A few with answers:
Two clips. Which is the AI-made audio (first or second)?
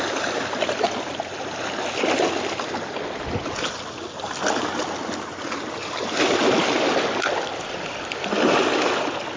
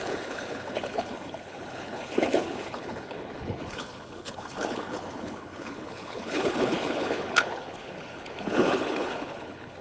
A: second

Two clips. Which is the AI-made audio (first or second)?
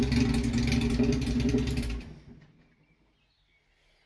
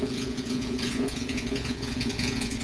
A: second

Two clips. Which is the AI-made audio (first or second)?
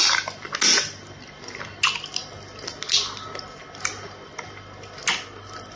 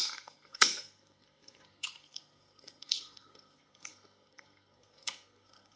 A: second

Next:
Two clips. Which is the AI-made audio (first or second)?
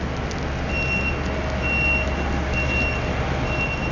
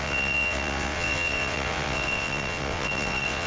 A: second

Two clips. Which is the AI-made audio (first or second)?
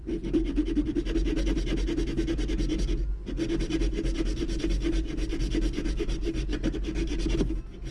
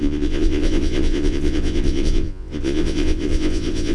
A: second